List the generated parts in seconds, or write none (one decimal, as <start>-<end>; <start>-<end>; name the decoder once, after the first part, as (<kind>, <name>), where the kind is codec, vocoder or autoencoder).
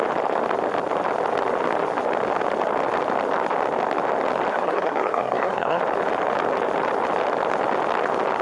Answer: 4.5-5.8 (codec, SNAC)